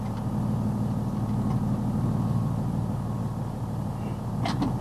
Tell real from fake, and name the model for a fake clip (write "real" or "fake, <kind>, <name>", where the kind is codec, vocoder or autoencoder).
real